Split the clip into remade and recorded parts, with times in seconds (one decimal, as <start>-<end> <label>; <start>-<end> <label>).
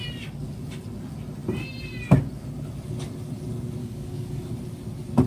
0.0-3.8 recorded; 3.8-4.5 remade; 4.5-5.3 recorded